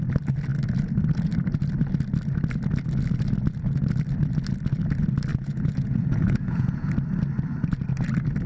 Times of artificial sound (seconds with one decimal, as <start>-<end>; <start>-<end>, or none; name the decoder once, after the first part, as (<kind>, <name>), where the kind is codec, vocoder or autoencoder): 5.3-6.9 (vocoder, Vocos)